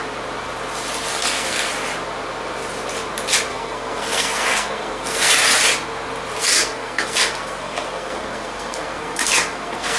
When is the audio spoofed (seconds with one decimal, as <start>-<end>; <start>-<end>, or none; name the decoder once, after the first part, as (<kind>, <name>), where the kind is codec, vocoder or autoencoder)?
1.1-1.7 (codec, SNAC); 3.5-5.3; 6.4-10.0